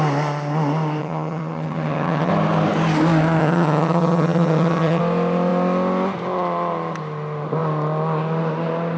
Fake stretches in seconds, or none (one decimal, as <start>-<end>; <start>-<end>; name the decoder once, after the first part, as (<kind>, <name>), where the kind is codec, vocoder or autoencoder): 1.0-2.3 (vocoder, HiFi-GAN); 3.4-5.0